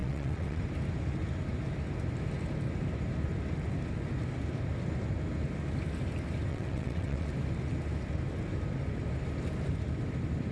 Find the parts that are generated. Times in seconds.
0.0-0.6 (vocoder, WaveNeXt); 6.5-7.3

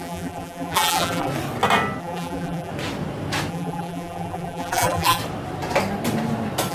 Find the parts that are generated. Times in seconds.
0.0-1.3 (vocoder, BigVGAN v2); 2.0-2.7; 3.5-5.2

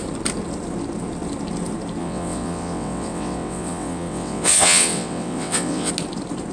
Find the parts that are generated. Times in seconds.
2.0-5.9 (vocoder, WaveNeXt)

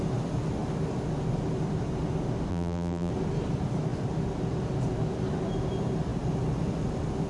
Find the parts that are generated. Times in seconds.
2.5-3.1 (vocoder, BigVGAN v2)

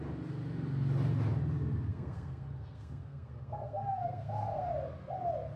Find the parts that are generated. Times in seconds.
1.9-4.7 (codec, SNAC)

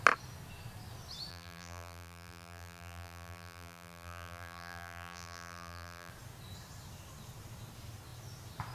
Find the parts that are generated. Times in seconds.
1.3-6.1 (vocoder, BigVGAN v2)